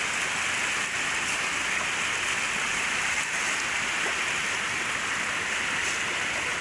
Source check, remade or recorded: recorded